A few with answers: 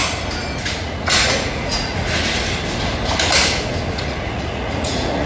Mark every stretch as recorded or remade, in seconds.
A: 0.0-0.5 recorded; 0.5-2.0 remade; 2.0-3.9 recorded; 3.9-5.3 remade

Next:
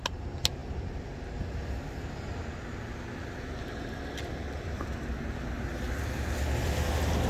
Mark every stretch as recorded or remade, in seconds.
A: 0.0-7.3 recorded